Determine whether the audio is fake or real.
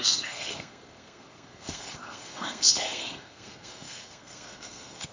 fake